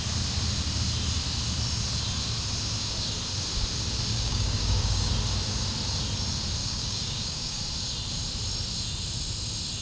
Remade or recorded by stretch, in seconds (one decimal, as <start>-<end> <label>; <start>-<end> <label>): 0.0-4.1 recorded; 4.1-5.1 remade; 5.1-6.6 recorded; 6.6-7.6 remade; 7.6-9.8 recorded